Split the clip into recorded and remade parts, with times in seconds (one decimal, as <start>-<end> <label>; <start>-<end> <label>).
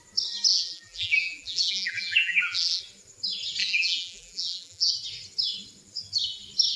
0.0-0.5 recorded; 0.5-2.8 remade; 2.8-3.6 recorded; 3.6-4.9 remade; 4.9-6.8 recorded